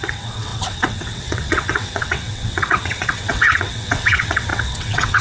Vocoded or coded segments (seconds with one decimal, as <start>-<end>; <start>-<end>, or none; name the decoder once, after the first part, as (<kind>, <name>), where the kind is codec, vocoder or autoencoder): 0.0-5.2 (vocoder, WaveNeXt)